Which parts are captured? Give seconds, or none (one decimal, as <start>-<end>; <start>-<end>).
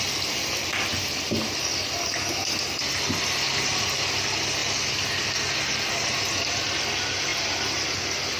0.0-8.4